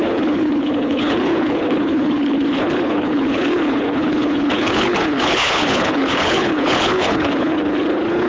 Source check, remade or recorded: remade